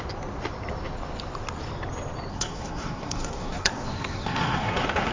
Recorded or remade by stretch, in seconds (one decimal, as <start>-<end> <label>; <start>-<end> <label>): 0.0-2.3 recorded; 2.3-5.1 remade